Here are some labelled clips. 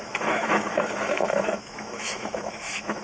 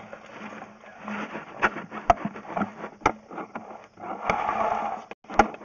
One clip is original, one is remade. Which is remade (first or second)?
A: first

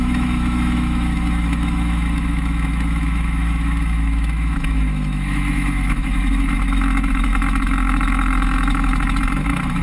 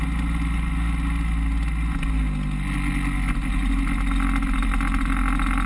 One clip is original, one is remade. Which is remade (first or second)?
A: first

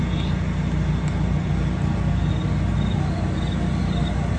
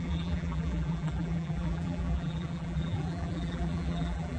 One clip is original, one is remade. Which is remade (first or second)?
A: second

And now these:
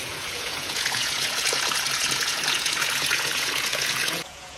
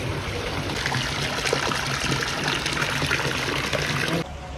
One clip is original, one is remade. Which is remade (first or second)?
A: first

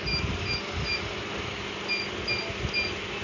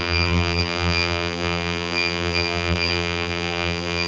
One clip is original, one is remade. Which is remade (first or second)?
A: second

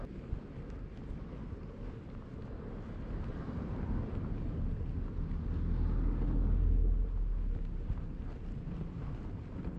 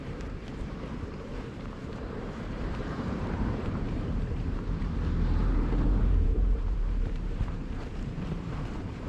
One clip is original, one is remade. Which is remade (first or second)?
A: second